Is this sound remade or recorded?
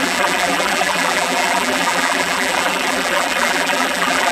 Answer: remade